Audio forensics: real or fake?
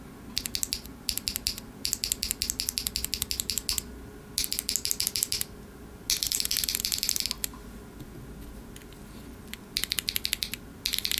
real